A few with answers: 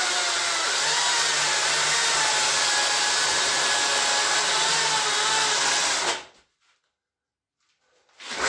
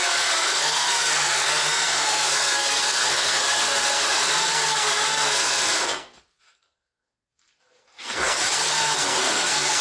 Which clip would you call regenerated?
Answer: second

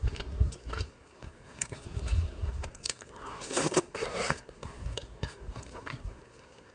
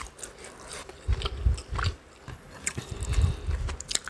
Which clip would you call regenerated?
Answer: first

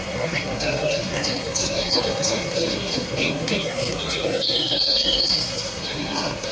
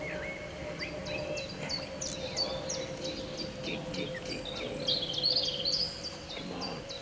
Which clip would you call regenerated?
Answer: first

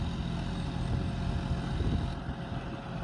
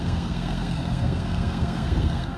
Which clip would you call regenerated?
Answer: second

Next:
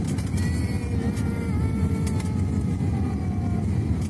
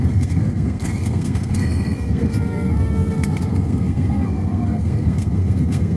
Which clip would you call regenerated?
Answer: second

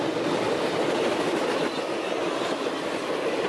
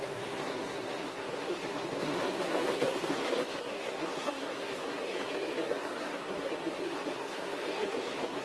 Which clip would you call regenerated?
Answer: second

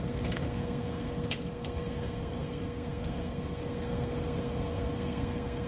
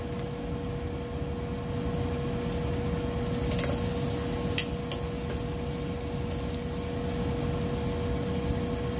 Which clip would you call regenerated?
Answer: first